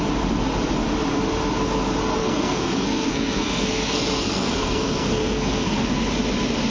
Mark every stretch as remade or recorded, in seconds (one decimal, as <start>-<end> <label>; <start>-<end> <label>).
0.0-2.2 recorded; 2.2-5.9 remade; 5.9-6.7 recorded